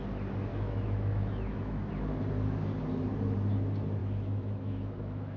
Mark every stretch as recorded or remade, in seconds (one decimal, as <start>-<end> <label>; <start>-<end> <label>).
0.0-0.5 recorded; 0.5-1.9 remade; 1.9-4.0 recorded; 4.0-5.4 remade